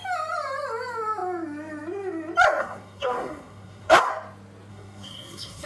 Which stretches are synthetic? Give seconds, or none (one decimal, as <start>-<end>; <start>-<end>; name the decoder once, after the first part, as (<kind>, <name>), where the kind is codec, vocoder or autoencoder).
2.6-4.1 (codec, SNAC); 4.7-5.7